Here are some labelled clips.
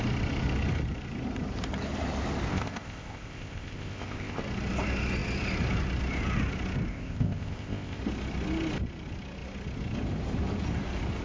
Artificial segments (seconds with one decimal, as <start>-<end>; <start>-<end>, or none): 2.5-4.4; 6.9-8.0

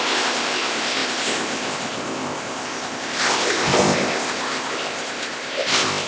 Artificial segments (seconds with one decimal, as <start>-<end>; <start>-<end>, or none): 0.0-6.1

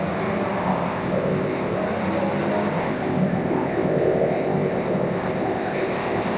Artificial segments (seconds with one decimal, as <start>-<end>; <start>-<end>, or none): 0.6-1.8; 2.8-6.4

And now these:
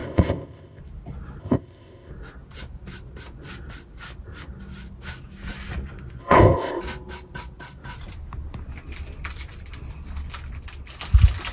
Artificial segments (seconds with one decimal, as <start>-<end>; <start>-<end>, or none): 0.0-0.8; 1.4-2.1; 6.2-6.8

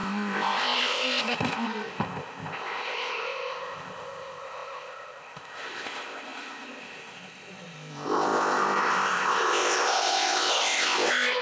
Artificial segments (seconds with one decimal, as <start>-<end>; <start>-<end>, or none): 0.0-11.4

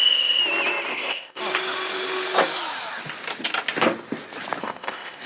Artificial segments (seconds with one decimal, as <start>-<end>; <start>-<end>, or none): 0.0-0.4; 0.9-1.4; 4.6-5.3